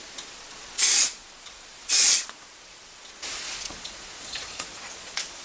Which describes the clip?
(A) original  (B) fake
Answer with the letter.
B